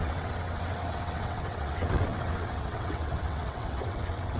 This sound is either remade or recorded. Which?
remade